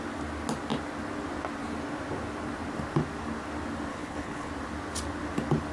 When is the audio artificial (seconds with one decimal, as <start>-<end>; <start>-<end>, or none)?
3.9-4.5